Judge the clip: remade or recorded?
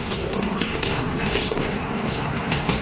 remade